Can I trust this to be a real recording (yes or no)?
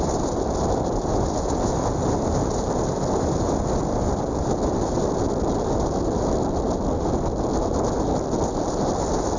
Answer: yes